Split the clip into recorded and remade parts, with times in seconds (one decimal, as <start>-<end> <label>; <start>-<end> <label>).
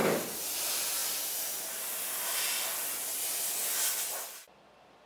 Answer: 0.0-5.1 recorded